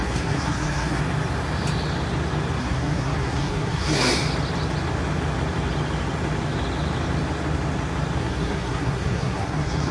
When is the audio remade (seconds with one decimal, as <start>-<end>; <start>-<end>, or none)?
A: 0.0-1.0; 2.6-4.1; 8.2-9.9